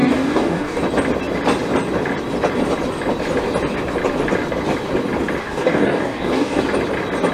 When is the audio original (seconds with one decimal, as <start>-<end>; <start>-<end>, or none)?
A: 0.8-5.4; 6.6-7.3